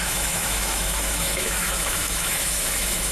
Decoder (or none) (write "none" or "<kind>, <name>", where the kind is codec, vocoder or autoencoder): autoencoder, DAC-VAE